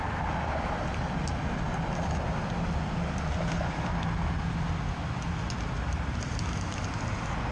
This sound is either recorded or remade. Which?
recorded